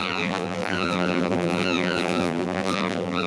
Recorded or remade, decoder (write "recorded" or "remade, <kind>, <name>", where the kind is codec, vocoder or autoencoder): remade, vocoder, BigVGAN v2